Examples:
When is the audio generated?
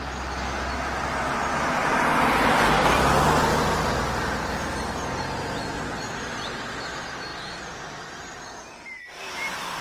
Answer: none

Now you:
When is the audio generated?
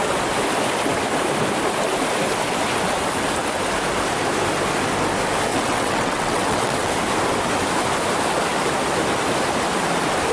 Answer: 5.5-6.9